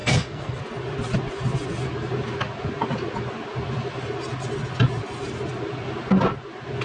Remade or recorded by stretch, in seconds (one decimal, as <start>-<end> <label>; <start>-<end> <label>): 0.0-0.6 remade; 0.6-6.8 recorded